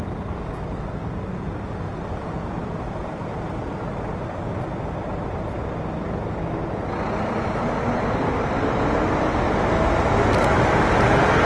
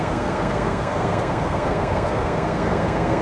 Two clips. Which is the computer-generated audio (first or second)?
second